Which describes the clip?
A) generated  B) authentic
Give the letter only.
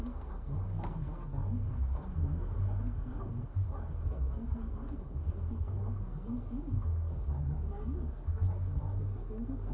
A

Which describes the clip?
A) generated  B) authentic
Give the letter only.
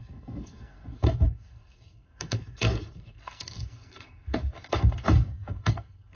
A